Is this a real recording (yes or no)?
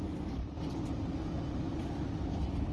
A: yes